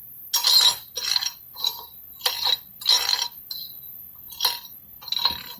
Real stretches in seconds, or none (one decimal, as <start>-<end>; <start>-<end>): 0.0-5.6

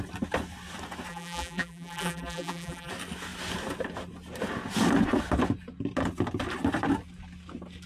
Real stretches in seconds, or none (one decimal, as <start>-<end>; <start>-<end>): 0.0-1.1; 2.9-7.9

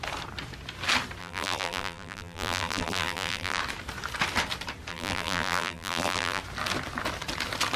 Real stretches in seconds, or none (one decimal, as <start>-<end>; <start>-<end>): 0.0-1.2; 3.6-4.9; 6.4-7.8

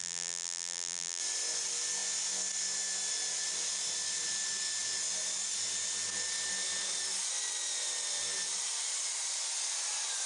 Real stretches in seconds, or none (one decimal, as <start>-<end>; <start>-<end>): 1.2-10.3

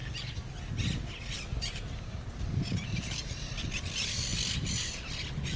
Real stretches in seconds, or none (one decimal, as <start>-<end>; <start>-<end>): 0.5-1.5; 3.3-5.6

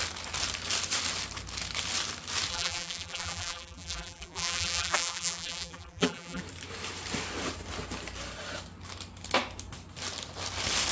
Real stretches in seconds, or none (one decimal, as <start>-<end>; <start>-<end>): 0.0-2.5; 6.4-10.9

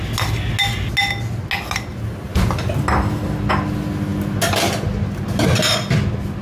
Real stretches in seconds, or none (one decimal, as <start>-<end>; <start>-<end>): 0.0-6.4

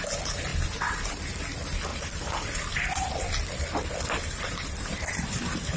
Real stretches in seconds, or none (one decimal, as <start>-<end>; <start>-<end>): 0.0-1.9